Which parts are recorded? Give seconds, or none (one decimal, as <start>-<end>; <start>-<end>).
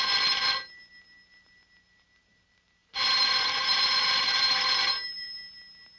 0.0-2.8; 5.4-6.0